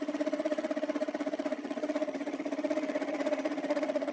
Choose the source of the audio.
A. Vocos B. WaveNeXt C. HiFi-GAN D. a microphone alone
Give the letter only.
C